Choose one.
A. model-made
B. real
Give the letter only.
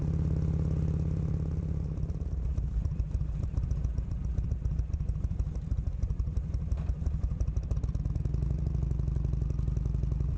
A